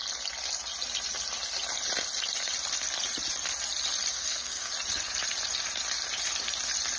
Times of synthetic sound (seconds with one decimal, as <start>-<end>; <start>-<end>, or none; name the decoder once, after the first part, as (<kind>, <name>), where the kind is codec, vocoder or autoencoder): 4.1-4.7 (codec, SNAC)